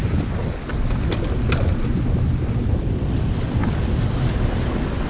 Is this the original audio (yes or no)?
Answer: yes